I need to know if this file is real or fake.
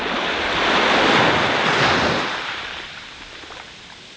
real